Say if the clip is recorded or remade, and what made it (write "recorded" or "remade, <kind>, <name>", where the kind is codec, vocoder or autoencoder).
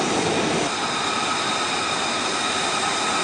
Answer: recorded